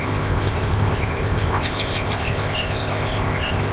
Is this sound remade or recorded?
remade